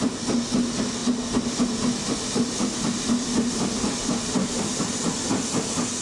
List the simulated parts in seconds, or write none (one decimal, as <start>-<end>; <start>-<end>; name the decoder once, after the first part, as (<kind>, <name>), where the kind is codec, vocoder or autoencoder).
1.0-4.6 (vocoder, BigVGAN v2)